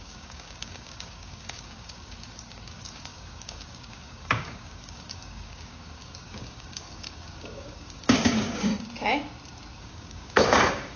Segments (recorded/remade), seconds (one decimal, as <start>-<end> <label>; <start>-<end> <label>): 0.0-8.7 remade; 8.7-9.8 recorded; 9.8-11.0 remade